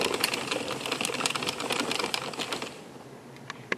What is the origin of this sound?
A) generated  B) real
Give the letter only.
B